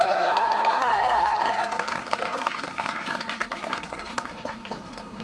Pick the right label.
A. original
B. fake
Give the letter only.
B